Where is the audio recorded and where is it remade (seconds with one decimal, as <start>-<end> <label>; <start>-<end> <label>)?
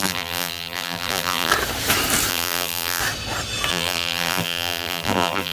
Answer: 0.0-1.5 remade; 1.5-2.3 recorded; 2.3-3.0 remade; 3.0-3.7 recorded; 3.7-5.5 remade